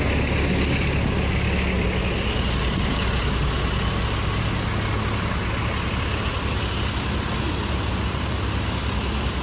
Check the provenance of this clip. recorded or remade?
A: recorded